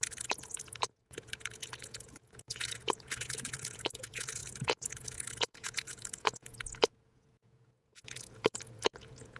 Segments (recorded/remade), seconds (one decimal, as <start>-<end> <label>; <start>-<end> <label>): 0.0-9.4 remade